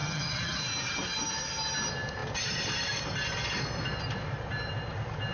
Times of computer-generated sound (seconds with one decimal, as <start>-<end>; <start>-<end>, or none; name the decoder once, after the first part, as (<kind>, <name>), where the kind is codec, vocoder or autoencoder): 0.0-0.6 (vocoder, HiFi-GAN)